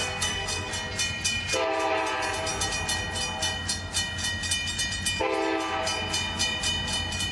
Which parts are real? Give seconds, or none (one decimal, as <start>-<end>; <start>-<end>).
0.7-7.3